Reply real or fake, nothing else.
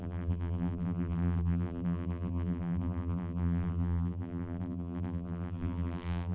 fake